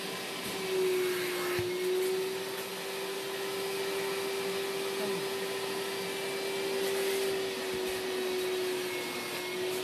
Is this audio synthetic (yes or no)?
no